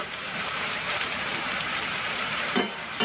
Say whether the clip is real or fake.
fake